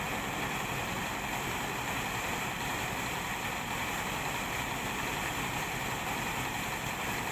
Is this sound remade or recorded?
remade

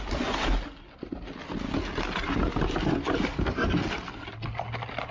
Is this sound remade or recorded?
recorded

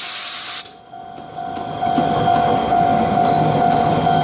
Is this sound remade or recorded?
recorded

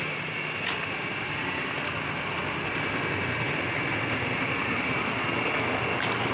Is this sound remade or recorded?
recorded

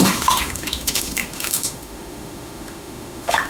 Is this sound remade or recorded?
remade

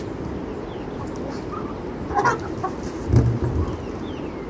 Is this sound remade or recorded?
recorded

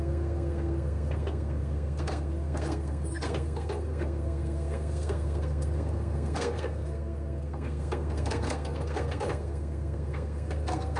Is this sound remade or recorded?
remade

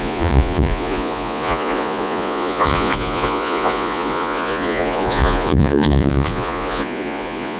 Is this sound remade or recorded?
remade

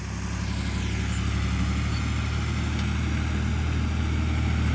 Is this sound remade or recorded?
recorded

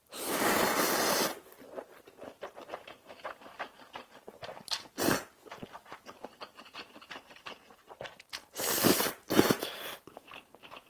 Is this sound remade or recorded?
remade